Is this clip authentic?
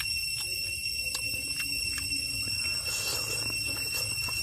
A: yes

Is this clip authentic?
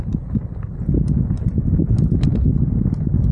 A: yes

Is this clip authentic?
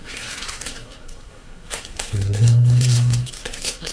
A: no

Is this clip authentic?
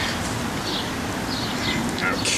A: yes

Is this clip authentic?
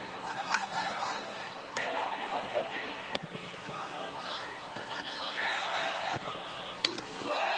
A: no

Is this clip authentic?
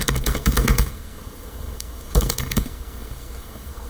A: no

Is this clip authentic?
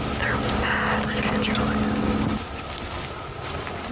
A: yes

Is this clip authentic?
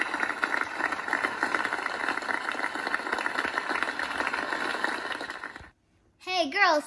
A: yes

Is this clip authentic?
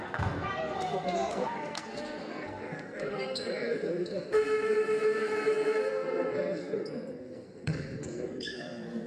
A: no